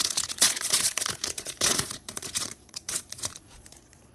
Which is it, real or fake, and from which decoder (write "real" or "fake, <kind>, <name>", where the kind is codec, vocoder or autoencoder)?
fake, vocoder, Vocos